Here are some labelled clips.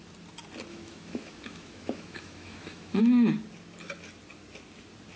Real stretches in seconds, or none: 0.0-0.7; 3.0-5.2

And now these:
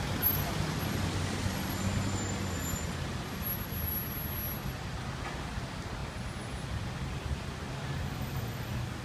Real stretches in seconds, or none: 0.0-9.0

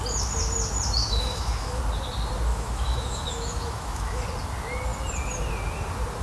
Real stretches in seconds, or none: 0.0-1.0; 1.8-2.5; 4.2-6.2

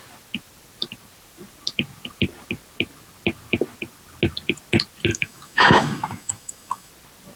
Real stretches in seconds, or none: 0.0-5.1; 6.9-7.4

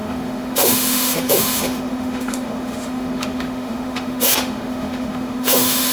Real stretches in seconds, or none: none